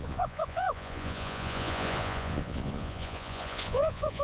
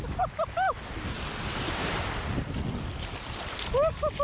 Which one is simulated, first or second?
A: first